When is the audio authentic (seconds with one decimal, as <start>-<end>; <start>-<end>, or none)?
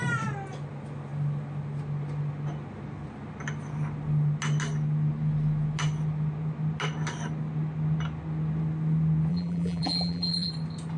0.0-9.3; 10.5-11.0